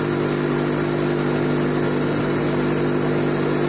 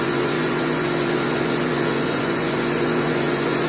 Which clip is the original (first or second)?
first